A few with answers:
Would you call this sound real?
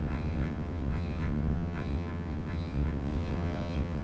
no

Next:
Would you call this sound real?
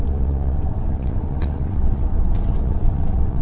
no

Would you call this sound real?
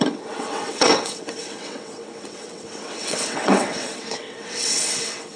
no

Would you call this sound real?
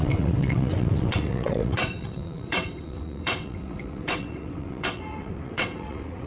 no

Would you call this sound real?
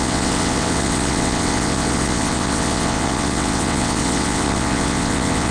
no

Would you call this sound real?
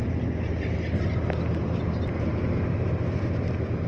yes